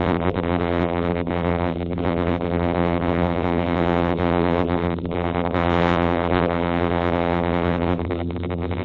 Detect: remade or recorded remade